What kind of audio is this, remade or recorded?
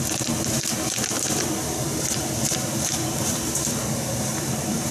remade